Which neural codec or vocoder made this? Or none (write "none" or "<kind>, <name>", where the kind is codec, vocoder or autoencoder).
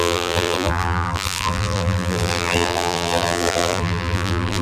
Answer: vocoder, BigVGAN v2